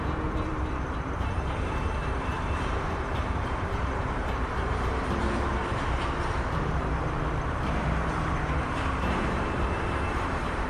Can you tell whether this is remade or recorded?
remade